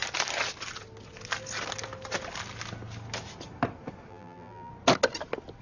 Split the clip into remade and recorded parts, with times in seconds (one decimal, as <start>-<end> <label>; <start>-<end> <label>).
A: 0.0-4.1 recorded; 4.1-4.7 remade; 4.7-5.6 recorded